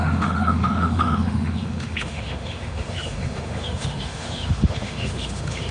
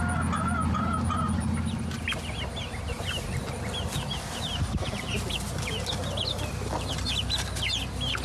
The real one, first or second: second